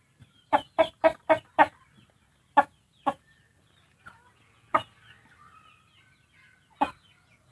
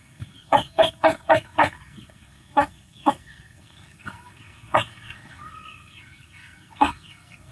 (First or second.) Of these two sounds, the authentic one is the first